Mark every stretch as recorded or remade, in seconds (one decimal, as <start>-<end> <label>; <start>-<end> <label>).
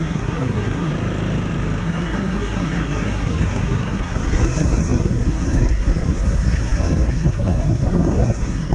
0.0-0.9 remade; 0.9-1.8 recorded; 1.8-8.7 remade